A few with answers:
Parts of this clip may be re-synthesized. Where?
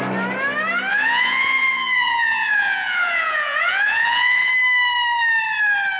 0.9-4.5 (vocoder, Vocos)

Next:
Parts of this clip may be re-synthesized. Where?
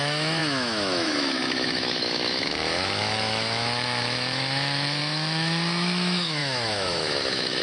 0.0-7.6 (autoencoder, DAC-VAE)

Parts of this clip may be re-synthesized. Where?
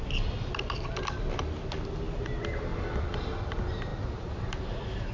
2.7-3.4 (vocoder, BigVGAN v2); 3.9-5.1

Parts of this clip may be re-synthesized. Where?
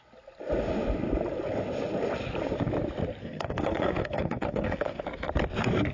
3.2-5.0 (codec, SNAC)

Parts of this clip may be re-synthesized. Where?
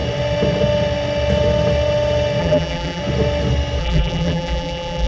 2.4-3.0 (vocoder, BigVGAN v2); 3.8-5.1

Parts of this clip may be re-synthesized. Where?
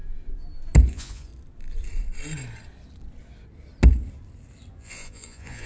0.9-1.3 (vocoder, Vocos); 4.7-5.7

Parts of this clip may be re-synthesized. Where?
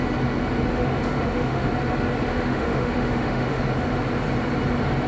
0.7-1.7 (autoencoder, DAC-VAE); 2.3-3.6